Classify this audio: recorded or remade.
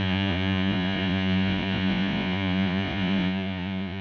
remade